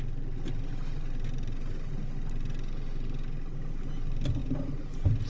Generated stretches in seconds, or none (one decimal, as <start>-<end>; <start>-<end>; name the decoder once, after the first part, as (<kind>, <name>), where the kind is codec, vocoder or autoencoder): none